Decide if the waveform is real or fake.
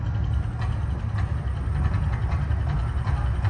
real